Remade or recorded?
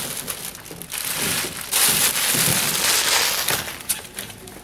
recorded